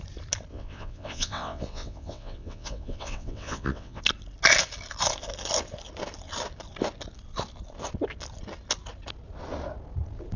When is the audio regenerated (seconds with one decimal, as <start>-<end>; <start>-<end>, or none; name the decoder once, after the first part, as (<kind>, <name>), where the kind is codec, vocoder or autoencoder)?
0.5-4.0 (vocoder, WaveNeXt)